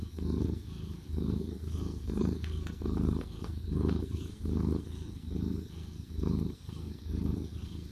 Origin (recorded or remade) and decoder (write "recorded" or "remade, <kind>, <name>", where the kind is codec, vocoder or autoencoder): remade, codec, SNAC